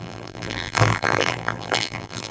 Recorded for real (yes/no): no